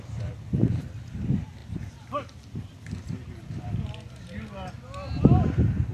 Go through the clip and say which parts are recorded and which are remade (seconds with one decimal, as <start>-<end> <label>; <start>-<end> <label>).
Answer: 0.0-1.6 recorded; 1.6-5.1 remade; 5.1-5.9 recorded